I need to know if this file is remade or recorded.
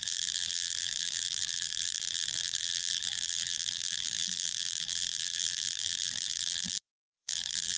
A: remade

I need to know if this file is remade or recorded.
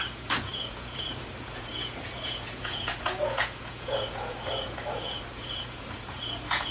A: remade